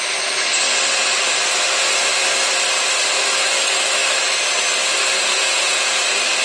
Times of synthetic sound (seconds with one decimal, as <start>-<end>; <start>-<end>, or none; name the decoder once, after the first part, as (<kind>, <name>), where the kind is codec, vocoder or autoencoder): 5.3-6.0 (vocoder, Vocos)